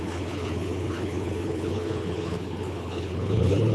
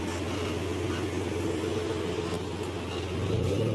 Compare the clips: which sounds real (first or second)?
second